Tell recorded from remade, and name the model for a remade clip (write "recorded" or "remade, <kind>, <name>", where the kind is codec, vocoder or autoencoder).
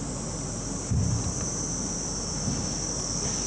recorded